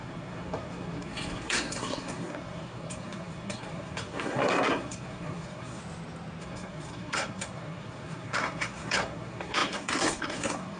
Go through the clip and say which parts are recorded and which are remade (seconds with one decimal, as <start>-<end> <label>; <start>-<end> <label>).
0.0-5.8 remade; 5.8-6.4 recorded; 6.4-10.8 remade